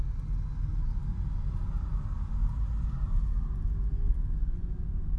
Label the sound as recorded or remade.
recorded